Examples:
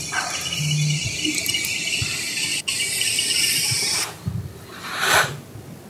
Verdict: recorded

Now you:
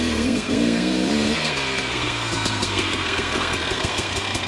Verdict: remade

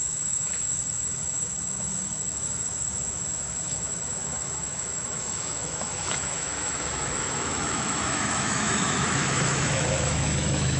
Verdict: remade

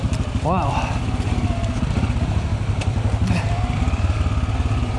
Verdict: recorded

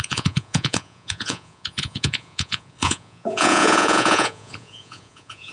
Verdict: remade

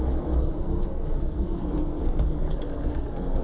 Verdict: remade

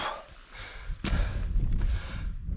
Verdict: recorded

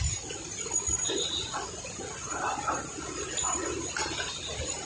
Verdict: recorded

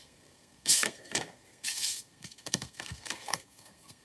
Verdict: remade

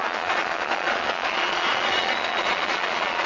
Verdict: remade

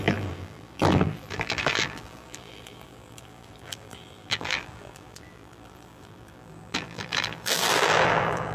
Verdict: remade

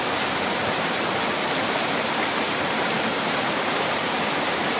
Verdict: remade